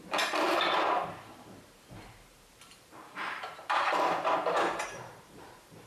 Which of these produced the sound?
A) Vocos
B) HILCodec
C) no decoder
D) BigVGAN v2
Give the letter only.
D